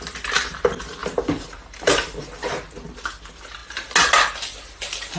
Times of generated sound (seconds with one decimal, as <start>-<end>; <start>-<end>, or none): 1.0-1.9

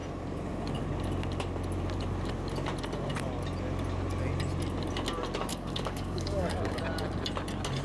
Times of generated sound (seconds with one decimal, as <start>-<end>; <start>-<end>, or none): 5.5-6.8

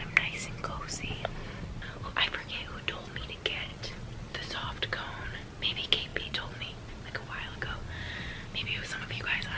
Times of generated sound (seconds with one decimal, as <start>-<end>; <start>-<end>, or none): 3.7-4.5; 6.1-6.7